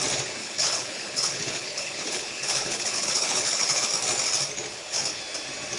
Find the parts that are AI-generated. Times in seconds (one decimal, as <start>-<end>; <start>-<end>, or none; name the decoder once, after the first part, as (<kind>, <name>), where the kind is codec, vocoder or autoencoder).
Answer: 0.4-3.9 (codec, HILCodec); 4.7-5.2